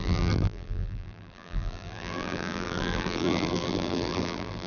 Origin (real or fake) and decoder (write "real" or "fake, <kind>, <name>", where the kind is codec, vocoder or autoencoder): fake, vocoder, BigVGAN v2